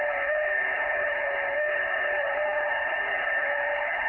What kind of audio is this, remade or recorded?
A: remade